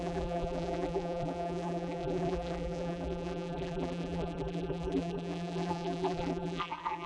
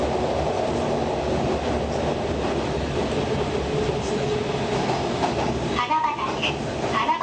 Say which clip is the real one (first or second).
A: second